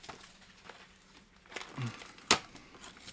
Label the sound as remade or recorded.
recorded